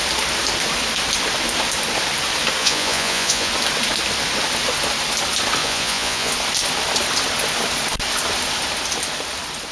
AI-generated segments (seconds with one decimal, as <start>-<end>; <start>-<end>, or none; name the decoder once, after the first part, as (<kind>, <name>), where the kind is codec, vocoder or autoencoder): 2.6-3.5 (vocoder, Vocos); 5.6-6.3